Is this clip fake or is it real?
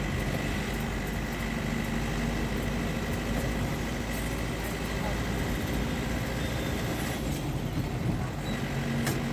real